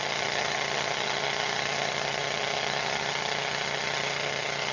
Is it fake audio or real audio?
fake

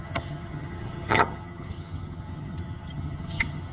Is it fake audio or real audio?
fake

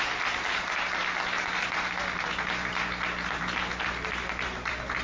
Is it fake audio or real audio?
real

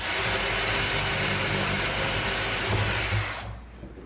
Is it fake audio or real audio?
real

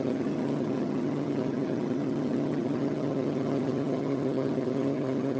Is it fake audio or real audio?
fake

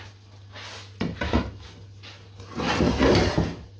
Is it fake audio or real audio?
real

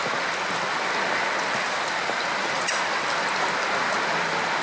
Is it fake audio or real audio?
real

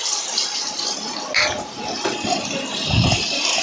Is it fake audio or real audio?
real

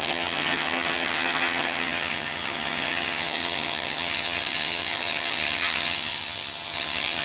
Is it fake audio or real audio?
fake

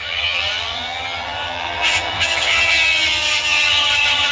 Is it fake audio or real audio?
fake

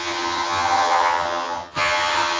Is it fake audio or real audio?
fake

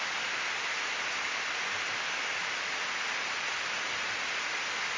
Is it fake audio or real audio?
real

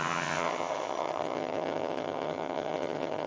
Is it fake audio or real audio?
fake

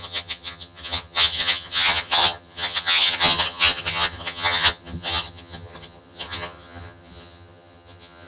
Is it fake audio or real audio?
fake